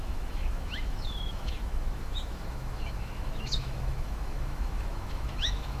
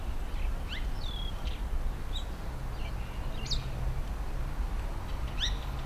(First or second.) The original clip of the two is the second